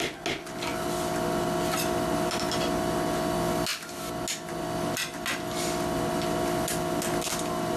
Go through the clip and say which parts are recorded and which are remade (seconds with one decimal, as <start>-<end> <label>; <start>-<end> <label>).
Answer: 0.0-7.8 recorded